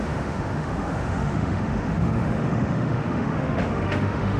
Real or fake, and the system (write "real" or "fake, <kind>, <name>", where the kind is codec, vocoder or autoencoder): fake, autoencoder, DAC-VAE